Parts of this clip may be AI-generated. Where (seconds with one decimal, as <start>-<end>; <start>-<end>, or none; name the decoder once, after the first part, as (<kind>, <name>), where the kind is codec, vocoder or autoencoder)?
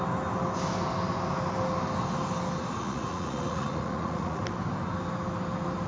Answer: 2.8-4.4 (vocoder, Vocos)